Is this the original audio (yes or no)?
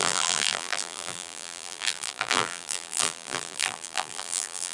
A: no